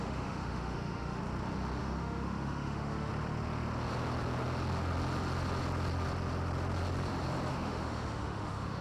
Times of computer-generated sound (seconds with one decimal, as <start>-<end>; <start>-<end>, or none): 0.0-1.2; 1.8-3.1; 7.5-8.8